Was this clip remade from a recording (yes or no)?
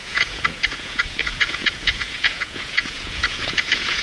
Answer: yes